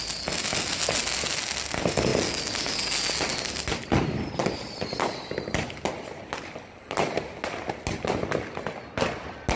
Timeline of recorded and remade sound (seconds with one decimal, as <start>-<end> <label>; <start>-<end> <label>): 0.0-9.6 recorded